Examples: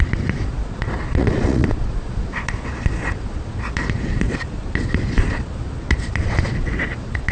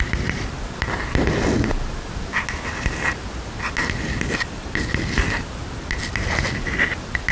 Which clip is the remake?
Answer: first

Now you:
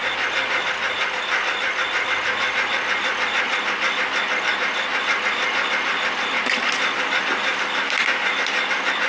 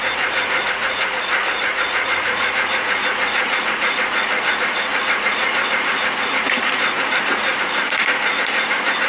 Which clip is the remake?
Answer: second